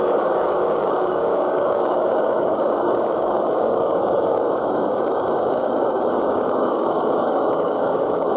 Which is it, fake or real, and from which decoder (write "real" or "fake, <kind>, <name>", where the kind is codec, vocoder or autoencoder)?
fake, codec, DAC